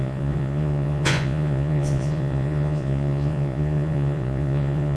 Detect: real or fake fake